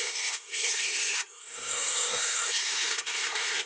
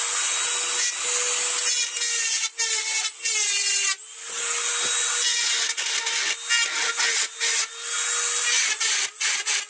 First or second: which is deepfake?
first